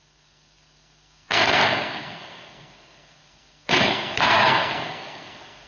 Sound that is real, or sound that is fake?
fake